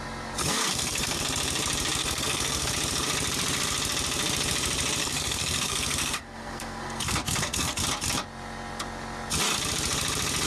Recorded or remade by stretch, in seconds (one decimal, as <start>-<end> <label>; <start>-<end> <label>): 0.0-0.4 recorded; 0.4-1.2 remade; 1.2-2.0 recorded; 2.0-2.7 remade; 2.7-5.0 recorded; 5.0-7.7 remade; 7.7-10.5 recorded